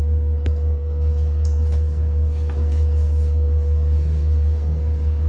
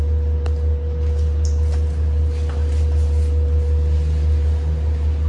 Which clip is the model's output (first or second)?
first